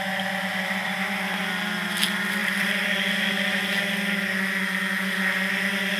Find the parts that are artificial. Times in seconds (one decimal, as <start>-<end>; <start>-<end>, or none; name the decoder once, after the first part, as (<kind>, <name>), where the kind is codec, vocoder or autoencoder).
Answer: 0.5-1.4 (vocoder, BigVGAN v2); 2.4-3.1